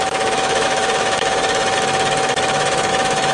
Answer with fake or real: fake